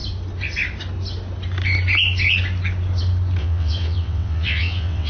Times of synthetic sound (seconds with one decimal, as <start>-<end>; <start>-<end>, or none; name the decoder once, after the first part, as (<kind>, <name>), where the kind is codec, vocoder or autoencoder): 3.4-5.1 (vocoder, WaveNeXt)